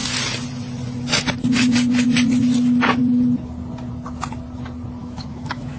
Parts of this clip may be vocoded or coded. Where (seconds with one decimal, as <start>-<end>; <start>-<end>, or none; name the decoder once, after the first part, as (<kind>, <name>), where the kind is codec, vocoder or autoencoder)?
5.0-5.8 (autoencoder, DAC-VAE)